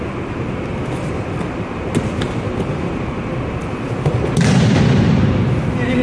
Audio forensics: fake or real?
real